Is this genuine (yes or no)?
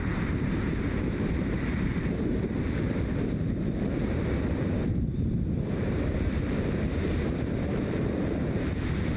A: no